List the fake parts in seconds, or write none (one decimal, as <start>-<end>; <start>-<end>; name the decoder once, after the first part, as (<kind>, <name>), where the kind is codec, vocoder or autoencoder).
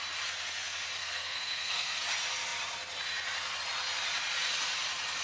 1.0-2.0 (codec, SNAC)